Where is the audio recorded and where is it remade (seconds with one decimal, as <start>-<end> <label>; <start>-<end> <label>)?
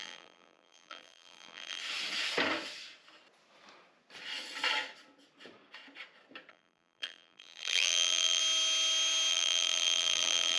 0.0-1.8 remade; 1.8-6.5 recorded; 6.5-8.4 remade; 8.4-9.3 recorded; 9.3-10.6 remade